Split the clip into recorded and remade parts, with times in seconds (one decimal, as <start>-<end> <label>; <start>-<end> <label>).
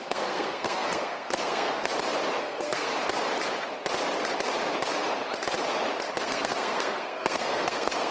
0.0-1.9 remade; 1.9-2.4 recorded; 2.4-2.9 remade; 2.9-6.2 recorded; 6.2-8.1 remade